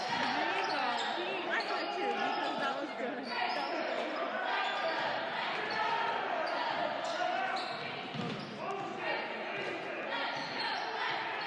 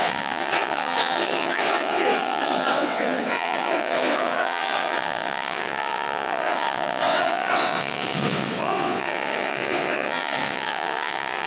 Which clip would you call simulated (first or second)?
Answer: second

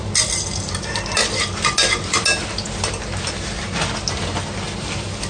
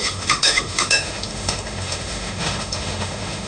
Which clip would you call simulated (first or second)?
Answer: second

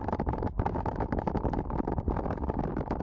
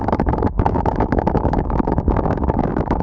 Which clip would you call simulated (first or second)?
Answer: second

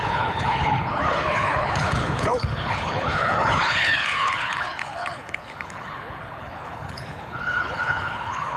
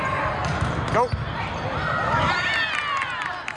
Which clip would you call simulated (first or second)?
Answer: first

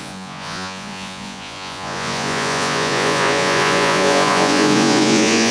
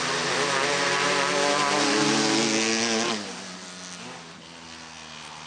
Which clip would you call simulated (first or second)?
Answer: first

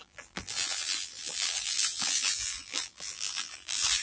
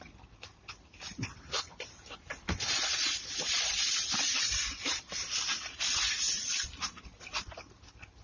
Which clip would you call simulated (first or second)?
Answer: first